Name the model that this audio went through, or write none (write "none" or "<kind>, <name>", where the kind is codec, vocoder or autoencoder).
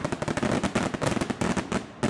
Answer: none